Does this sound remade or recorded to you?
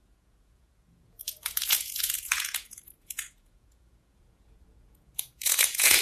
remade